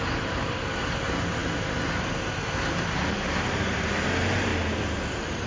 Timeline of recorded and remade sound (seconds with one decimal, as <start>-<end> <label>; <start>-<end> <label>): 0.0-4.5 remade; 4.5-5.1 recorded; 5.1-5.5 remade